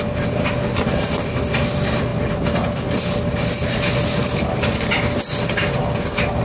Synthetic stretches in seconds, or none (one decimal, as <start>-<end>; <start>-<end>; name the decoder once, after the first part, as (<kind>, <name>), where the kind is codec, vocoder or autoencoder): none